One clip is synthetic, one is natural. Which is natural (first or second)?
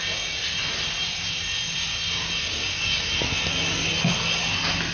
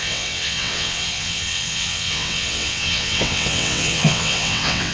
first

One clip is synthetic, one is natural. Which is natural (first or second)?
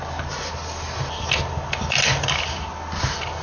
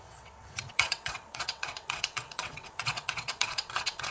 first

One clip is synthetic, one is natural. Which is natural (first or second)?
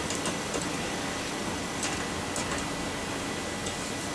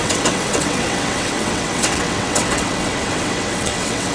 first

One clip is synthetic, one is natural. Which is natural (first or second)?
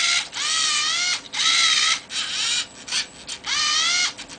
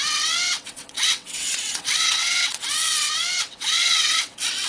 first